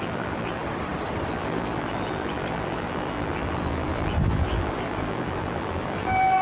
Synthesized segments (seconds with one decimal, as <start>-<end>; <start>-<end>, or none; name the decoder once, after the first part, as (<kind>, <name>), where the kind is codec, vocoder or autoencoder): 0.0-0.6 (vocoder, BigVGAN v2); 1.3-6.4